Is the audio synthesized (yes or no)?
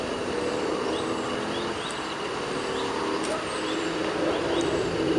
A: no